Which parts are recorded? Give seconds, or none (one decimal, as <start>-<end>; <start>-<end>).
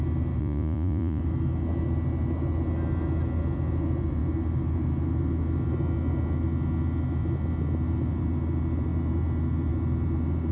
0.0-0.4; 1.2-10.5